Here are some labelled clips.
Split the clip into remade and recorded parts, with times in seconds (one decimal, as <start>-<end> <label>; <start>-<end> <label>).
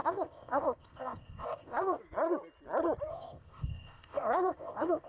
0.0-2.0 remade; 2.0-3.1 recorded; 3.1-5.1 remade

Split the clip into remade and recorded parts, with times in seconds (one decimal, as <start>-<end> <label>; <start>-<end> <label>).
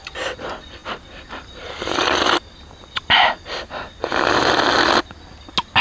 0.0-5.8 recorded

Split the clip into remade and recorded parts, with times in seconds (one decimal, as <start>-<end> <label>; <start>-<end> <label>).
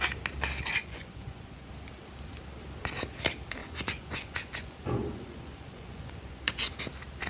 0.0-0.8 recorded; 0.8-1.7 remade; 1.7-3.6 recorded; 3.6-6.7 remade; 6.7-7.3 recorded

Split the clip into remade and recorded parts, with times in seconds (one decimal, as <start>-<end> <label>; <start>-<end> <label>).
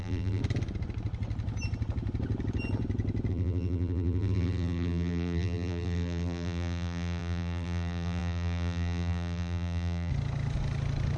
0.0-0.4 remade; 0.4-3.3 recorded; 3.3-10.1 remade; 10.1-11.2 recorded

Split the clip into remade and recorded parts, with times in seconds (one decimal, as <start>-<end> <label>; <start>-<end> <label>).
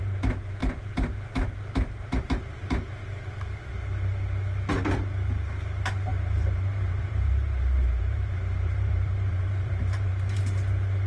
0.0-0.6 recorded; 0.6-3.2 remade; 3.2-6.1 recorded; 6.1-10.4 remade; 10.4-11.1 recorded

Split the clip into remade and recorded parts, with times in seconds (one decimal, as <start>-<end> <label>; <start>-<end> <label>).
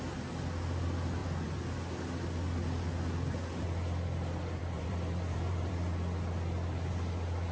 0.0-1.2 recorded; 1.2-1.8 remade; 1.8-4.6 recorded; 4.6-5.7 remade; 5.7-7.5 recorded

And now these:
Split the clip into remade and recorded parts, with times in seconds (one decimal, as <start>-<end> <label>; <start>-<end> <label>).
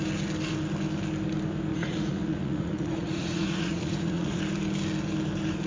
0.0-1.7 recorded; 1.7-4.4 remade; 4.4-5.7 recorded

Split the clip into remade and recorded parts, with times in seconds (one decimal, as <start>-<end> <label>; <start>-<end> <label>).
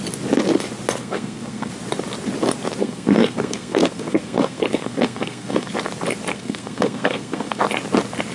0.0-1.0 recorded; 1.0-1.7 remade; 1.7-2.8 recorded; 2.8-5.7 remade; 5.7-6.3 recorded; 6.3-7.6 remade; 7.6-8.3 recorded